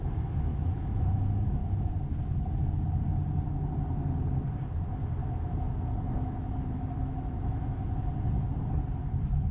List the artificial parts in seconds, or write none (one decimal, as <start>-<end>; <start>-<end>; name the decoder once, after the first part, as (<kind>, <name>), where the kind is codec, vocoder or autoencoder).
0.5-1.9 (autoencoder, DAC-VAE); 5.2-7.8